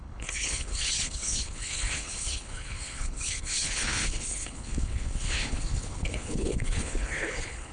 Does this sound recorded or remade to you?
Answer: remade